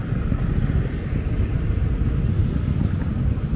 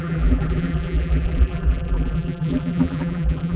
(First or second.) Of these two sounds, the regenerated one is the second